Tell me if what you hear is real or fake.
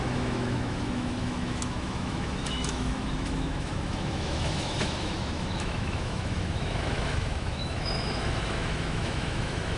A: fake